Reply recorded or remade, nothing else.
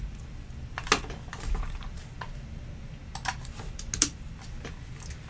recorded